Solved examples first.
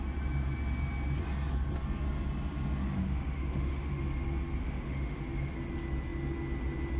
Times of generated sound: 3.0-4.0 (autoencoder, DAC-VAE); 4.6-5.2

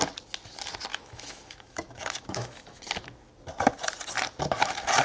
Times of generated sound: 0.9-2.8 (autoencoder, DAC-VAE)

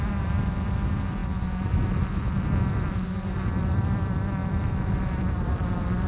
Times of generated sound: none

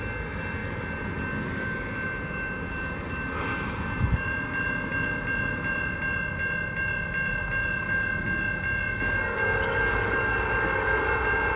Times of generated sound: none

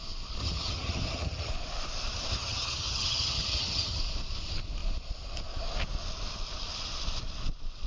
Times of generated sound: 0.4-1.5 (vocoder, HiFi-GAN); 2.3-4.0

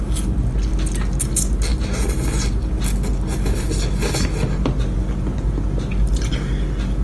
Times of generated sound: none

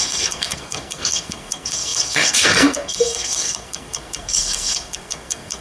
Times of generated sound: 0.0-5.6 (codec, SNAC)

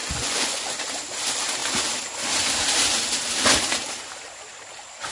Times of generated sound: 0.0-0.8 (vocoder, Vocos)